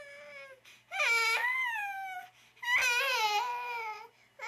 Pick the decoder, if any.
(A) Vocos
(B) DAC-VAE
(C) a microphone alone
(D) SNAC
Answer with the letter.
C